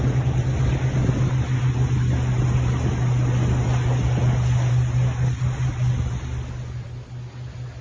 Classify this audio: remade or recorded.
recorded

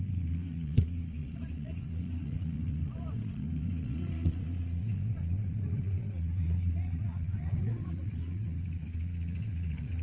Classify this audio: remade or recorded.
remade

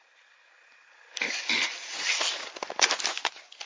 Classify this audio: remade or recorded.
recorded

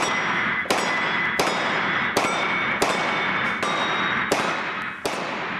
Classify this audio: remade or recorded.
recorded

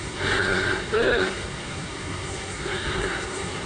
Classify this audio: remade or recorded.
remade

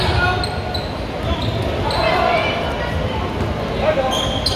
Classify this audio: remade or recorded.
recorded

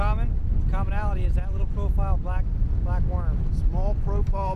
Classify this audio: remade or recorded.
recorded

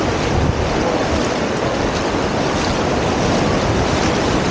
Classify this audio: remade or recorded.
remade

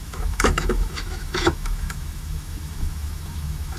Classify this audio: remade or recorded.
remade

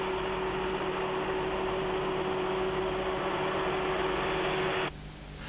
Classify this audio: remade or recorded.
recorded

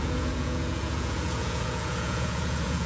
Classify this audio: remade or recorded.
remade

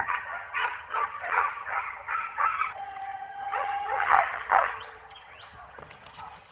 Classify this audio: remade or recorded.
remade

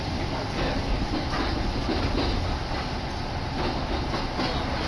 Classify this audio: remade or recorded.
recorded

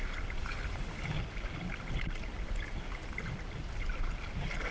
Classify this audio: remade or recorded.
recorded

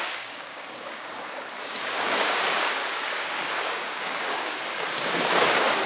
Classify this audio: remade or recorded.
remade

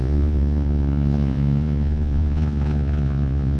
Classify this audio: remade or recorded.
remade